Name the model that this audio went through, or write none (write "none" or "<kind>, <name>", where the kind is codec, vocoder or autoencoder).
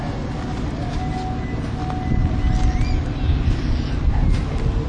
none